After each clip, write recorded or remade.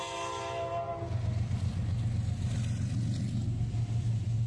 recorded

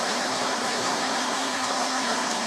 remade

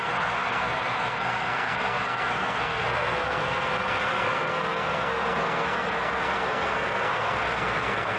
remade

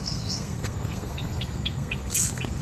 remade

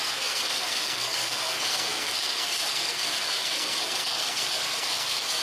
remade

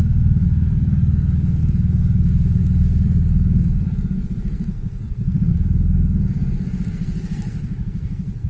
remade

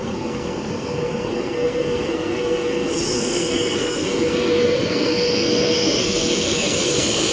remade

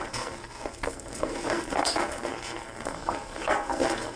remade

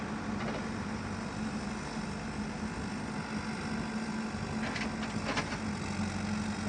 recorded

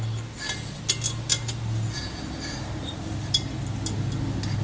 recorded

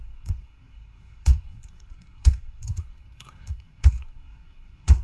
remade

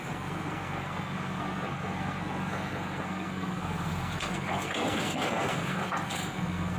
remade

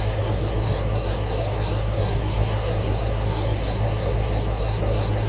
remade